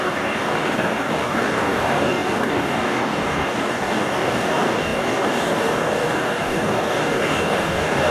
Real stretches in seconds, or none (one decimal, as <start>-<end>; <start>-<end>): none